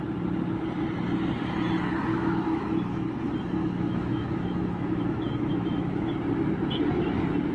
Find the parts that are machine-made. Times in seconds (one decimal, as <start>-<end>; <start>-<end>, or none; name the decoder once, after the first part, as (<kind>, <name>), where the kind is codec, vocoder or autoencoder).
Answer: 2.1-3.1 (autoencoder, DAC-VAE); 3.6-6.1